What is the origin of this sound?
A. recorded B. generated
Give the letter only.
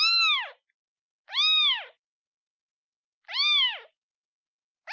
A